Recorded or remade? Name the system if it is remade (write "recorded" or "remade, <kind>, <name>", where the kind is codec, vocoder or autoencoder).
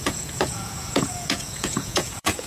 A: remade, vocoder, Vocos